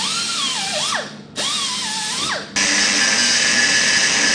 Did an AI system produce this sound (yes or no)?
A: no